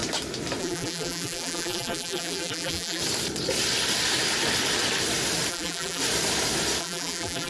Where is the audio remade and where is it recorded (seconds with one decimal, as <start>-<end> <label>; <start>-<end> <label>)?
0.0-0.6 recorded; 0.6-3.0 remade; 3.0-5.5 recorded; 5.5-6.0 remade; 6.0-6.8 recorded; 6.8-7.5 remade